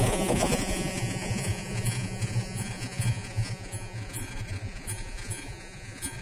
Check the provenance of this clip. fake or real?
fake